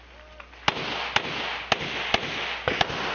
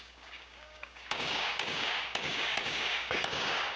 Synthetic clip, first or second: second